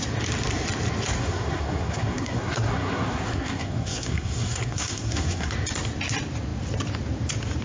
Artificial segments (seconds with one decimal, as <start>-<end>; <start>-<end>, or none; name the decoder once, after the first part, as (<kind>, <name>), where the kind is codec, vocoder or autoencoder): 1.2-5.5 (codec, SNAC)